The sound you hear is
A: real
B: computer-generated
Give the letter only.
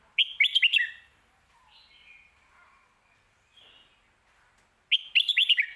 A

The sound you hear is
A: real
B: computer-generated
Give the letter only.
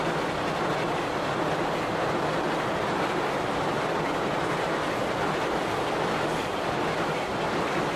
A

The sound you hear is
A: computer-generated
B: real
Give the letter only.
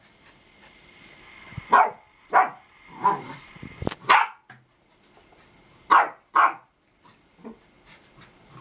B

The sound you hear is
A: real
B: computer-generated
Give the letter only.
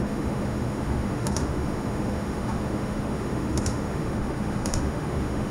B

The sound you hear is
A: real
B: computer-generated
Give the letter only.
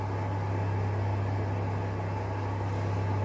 A